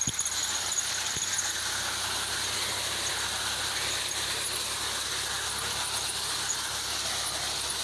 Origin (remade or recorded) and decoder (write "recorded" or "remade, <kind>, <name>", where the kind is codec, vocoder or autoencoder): recorded